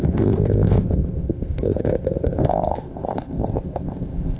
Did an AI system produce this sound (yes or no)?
yes